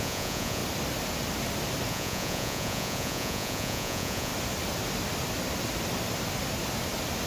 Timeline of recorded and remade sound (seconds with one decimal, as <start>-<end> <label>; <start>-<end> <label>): 0.0-0.6 remade; 0.6-1.9 recorded; 1.9-4.3 remade; 4.3-7.3 recorded